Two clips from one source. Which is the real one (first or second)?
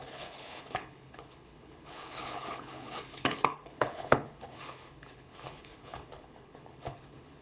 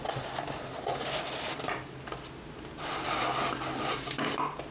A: second